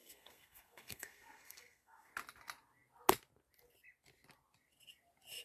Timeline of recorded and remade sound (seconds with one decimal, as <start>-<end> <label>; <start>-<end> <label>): 0.0-2.1 remade; 2.1-5.4 recorded